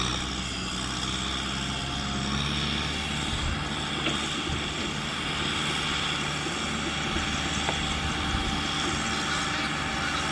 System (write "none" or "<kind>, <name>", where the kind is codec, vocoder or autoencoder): none